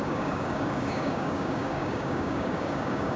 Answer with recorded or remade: remade